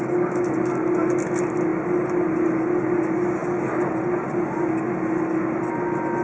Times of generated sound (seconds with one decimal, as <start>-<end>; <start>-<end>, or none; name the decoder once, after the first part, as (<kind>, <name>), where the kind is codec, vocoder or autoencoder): none